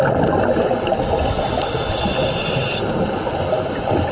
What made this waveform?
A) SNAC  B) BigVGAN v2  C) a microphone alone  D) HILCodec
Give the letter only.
C